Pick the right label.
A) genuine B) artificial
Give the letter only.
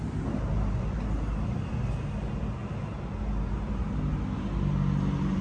A